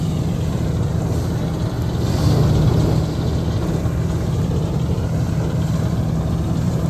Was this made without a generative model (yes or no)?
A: yes